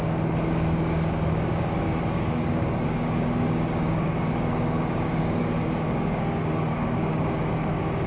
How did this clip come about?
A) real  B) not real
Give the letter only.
B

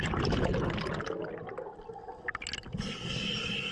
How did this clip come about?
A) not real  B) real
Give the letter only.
B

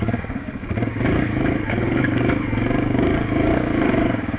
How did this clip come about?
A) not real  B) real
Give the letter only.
A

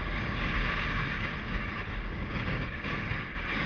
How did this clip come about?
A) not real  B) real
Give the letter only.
A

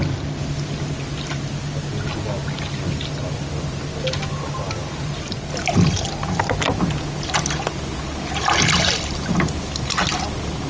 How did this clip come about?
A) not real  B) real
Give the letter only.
B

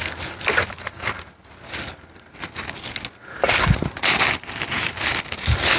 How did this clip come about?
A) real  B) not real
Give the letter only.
A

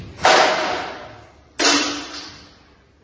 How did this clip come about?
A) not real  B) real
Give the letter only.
B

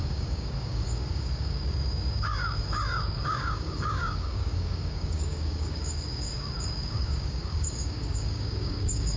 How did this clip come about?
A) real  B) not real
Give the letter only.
B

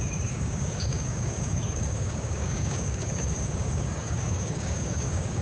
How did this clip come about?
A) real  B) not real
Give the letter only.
B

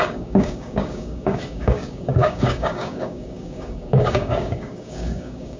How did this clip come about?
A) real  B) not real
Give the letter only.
B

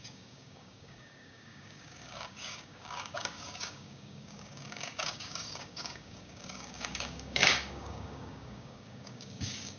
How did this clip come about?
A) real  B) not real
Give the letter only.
B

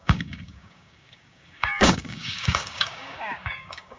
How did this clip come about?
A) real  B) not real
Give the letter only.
B